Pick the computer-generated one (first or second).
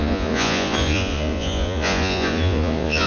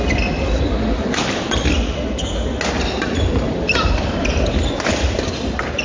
first